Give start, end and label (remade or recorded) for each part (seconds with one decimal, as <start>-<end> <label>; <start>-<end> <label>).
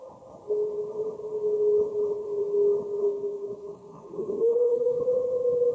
0.0-3.0 recorded; 3.0-5.0 remade; 5.0-5.7 recorded